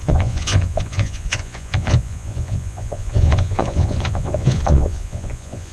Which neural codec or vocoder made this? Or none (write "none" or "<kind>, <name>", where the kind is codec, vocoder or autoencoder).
vocoder, Vocos